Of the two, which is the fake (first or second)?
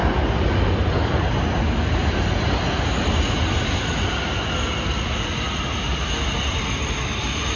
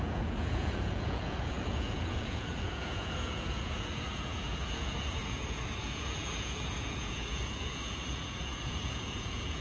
second